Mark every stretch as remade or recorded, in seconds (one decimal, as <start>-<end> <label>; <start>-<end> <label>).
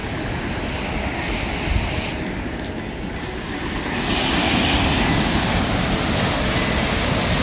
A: 0.0-7.4 recorded